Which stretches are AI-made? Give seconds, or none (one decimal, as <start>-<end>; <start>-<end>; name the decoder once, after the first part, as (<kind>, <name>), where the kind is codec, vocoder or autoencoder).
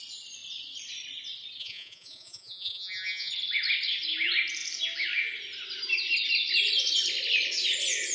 1.6-3.3 (vocoder, Vocos)